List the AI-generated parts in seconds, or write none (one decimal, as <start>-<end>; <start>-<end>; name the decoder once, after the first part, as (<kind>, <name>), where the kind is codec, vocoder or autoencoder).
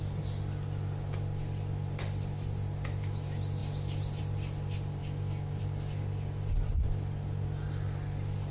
5.0-5.6 (codec, DAC)